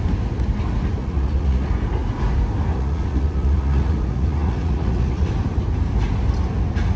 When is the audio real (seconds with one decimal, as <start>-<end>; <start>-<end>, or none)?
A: 0.0-1.0; 1.7-2.7; 5.3-7.0